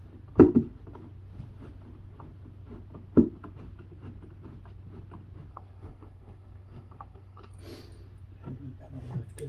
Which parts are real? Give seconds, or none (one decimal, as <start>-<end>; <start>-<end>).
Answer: 0.0-5.5; 7.6-9.5